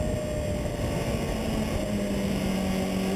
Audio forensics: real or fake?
real